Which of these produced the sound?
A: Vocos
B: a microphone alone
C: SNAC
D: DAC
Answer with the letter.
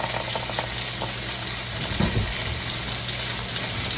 B